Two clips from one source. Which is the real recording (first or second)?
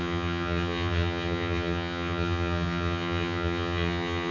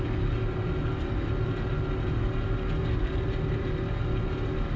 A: second